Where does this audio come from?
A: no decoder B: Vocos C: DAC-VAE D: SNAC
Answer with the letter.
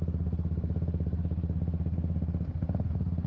A